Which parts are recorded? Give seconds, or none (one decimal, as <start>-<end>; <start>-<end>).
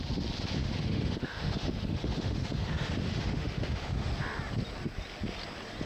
0.0-0.6; 4.1-5.9